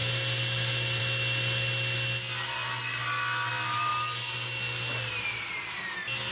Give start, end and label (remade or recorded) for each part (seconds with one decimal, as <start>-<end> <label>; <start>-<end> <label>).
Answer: 0.0-6.3 recorded